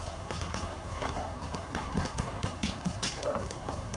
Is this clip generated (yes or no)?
yes